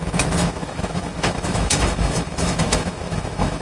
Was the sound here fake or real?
fake